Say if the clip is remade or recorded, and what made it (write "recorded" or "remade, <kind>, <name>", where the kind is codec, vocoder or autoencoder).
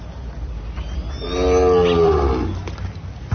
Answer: recorded